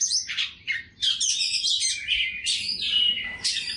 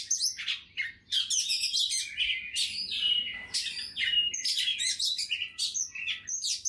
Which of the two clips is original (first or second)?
second